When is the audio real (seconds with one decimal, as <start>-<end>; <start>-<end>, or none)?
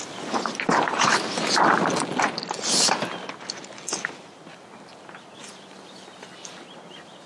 0.0-7.3